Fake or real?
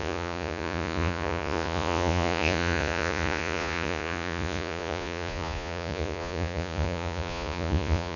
fake